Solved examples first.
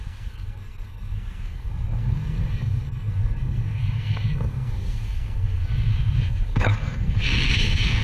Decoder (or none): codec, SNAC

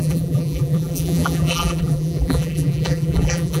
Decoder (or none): vocoder, BigVGAN v2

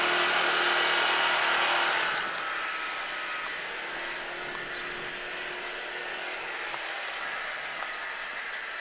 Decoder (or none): none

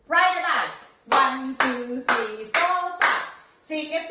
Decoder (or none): none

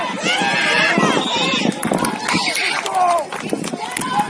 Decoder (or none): none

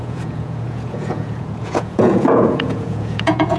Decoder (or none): vocoder, Vocos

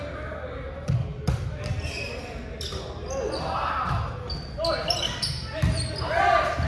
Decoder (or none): none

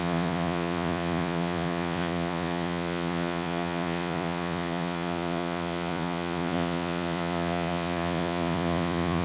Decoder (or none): vocoder, Vocos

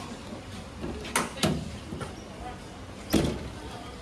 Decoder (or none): none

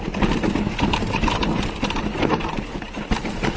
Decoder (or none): none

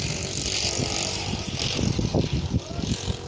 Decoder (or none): none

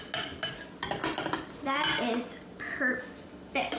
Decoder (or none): none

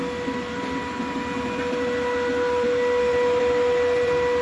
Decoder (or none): none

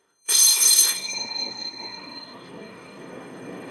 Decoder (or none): codec, SNAC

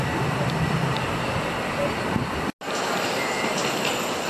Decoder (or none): none